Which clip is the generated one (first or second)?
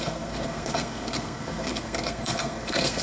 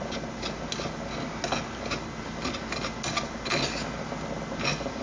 first